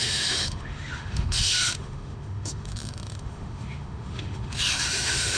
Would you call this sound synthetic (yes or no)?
yes